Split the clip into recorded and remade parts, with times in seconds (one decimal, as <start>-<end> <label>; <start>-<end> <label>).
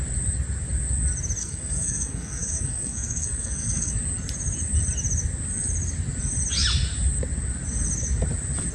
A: 0.0-1.4 recorded; 1.4-3.9 remade; 3.9-8.7 recorded